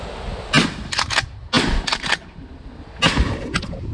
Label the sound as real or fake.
real